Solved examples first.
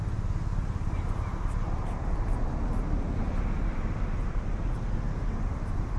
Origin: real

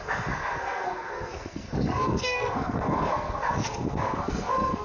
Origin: fake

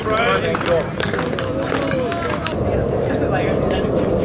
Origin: real